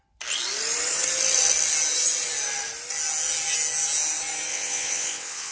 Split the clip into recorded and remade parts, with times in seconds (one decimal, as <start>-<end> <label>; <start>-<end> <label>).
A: 0.0-4.5 recorded; 4.5-5.5 remade